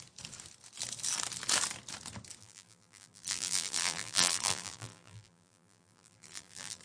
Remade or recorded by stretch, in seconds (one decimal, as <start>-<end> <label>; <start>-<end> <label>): 0.0-2.4 recorded; 2.4-6.8 remade